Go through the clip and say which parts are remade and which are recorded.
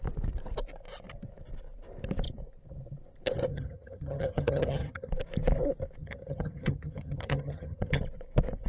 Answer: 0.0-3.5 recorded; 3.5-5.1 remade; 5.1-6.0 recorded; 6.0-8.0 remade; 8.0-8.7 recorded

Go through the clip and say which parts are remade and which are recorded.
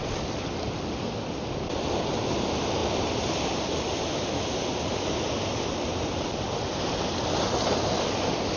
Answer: 0.0-8.6 recorded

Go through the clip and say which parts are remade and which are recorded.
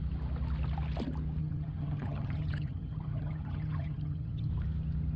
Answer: 0.0-1.4 recorded; 1.4-4.5 remade; 4.5-5.2 recorded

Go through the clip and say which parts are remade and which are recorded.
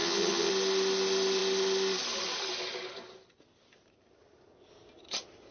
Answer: 0.0-0.5 remade; 0.5-5.5 recorded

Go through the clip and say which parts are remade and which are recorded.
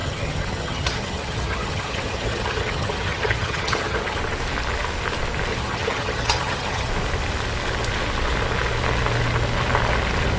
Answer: 0.0-4.2 remade; 4.2-5.5 recorded; 5.5-6.9 remade; 6.9-10.4 recorded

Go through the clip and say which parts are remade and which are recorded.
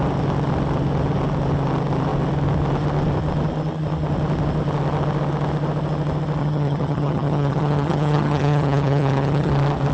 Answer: 0.0-6.4 recorded; 6.4-9.5 remade; 9.5-9.9 recorded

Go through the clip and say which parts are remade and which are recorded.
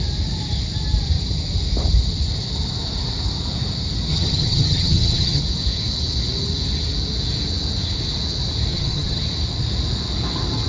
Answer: 0.0-4.1 recorded; 4.1-5.4 remade; 5.4-8.7 recorded; 8.7-9.2 remade; 9.2-10.7 recorded